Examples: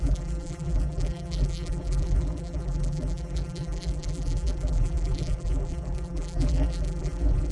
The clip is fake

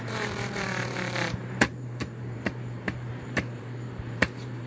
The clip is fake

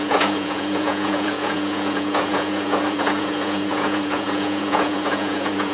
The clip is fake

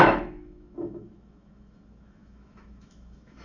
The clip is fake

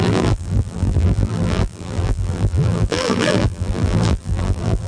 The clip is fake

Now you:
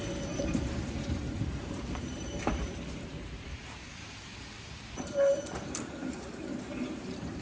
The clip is fake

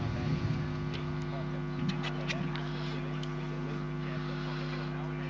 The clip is real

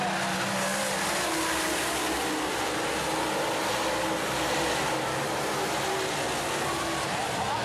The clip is real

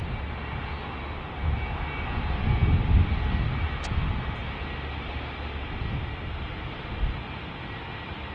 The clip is real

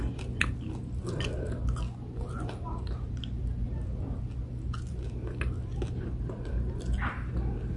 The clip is real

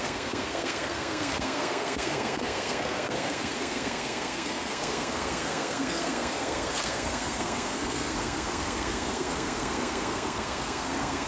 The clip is fake